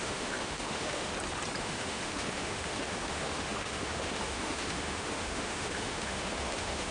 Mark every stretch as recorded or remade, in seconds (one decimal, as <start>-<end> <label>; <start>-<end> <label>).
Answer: 0.0-1.1 remade; 1.1-1.6 recorded; 1.6-6.9 remade